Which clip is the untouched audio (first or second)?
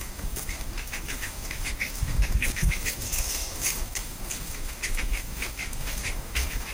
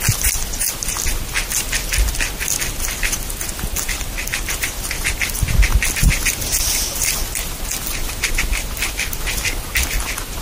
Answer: second